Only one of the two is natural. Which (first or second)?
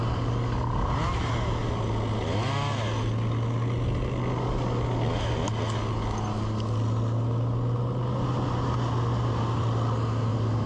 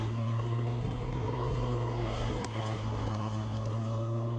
first